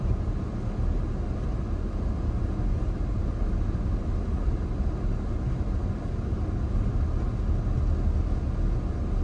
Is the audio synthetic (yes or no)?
no